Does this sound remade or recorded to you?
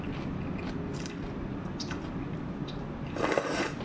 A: recorded